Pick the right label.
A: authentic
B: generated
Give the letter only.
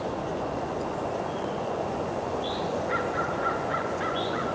B